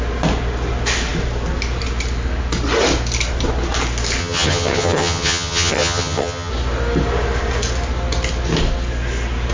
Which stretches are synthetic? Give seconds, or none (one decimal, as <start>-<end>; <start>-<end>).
4.2-6.5